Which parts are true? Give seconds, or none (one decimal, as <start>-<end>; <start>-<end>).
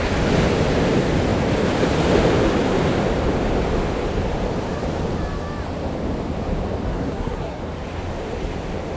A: 0.0-6.9; 7.6-9.0